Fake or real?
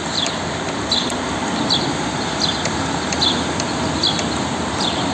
real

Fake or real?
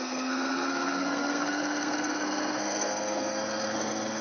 fake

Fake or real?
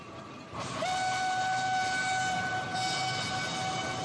real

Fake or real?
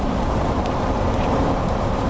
fake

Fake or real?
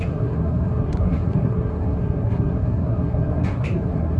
fake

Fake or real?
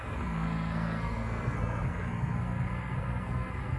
fake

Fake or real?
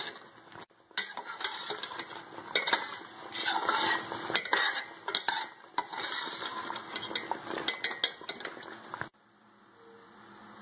real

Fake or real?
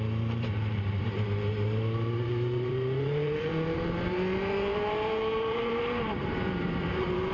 fake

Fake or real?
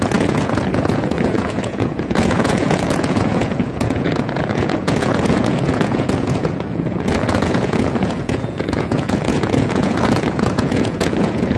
fake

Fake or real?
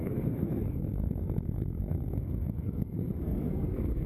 fake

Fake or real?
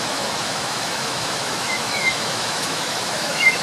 fake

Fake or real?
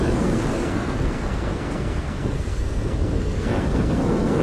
fake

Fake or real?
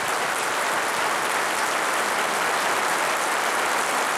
real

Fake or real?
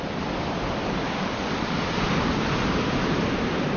real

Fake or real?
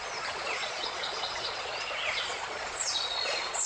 fake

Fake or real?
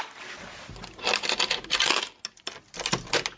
real